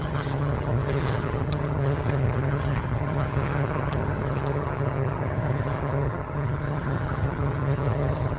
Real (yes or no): no